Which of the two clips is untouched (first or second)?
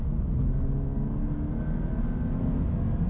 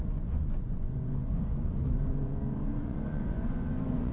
first